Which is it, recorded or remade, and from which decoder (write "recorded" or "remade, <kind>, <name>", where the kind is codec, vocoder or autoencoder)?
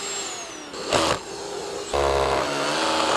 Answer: recorded